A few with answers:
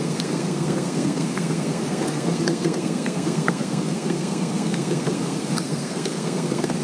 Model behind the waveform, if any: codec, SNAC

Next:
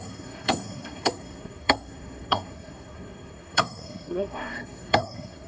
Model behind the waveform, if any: codec, SNAC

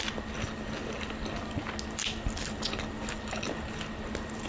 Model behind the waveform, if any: none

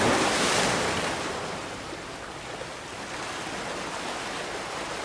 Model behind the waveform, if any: none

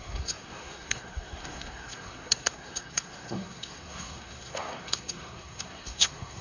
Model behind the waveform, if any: codec, SNAC